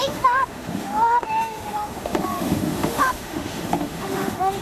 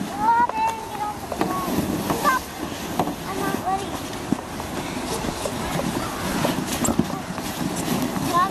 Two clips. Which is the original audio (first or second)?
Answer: second